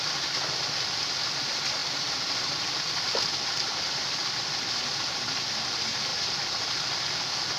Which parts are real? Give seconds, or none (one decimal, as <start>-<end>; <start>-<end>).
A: 0.0-1.8; 3.2-4.2; 4.8-6.1; 6.7-7.6